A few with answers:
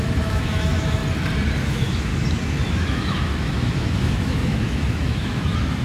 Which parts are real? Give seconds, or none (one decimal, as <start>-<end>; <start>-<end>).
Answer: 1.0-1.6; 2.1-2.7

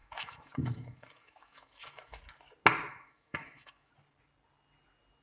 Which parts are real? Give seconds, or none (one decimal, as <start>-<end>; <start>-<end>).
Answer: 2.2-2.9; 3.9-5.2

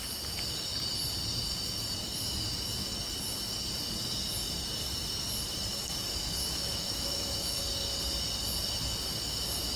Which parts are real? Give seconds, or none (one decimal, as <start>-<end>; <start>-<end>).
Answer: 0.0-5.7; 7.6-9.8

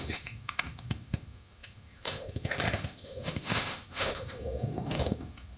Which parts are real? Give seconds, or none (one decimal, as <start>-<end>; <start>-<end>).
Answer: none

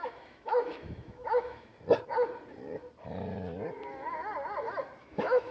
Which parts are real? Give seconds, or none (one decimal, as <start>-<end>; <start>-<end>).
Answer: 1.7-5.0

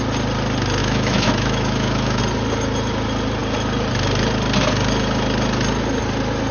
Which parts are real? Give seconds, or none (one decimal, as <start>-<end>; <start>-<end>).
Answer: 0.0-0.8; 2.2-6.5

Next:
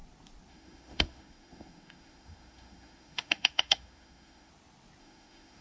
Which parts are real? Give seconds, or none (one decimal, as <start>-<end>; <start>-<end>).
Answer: 0.0-0.5; 4.5-5.0

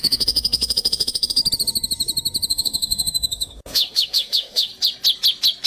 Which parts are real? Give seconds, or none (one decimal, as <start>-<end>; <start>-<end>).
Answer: 1.4-2.5; 4.7-5.7